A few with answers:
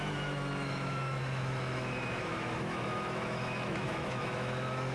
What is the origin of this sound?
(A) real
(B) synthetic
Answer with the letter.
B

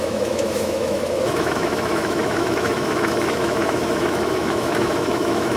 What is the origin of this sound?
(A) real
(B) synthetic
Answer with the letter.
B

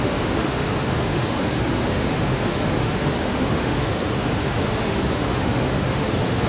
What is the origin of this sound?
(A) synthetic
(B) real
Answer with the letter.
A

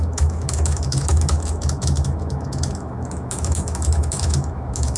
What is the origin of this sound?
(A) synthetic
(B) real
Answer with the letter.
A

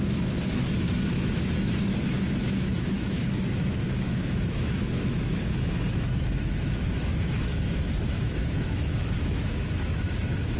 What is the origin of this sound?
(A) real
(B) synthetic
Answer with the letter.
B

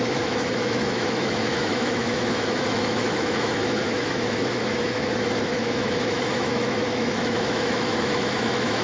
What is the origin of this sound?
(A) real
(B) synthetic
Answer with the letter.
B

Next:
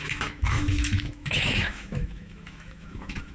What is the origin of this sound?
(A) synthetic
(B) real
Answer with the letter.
A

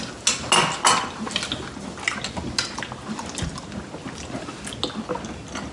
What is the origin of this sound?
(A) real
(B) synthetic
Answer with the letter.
A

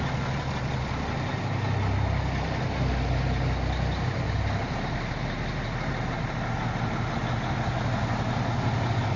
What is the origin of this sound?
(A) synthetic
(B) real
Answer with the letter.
B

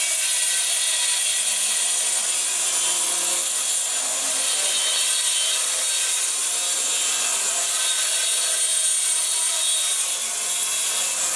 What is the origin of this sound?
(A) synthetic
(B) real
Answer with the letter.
B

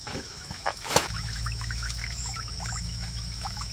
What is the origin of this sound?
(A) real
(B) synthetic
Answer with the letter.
B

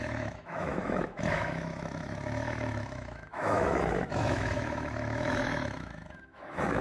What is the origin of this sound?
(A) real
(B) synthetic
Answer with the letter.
B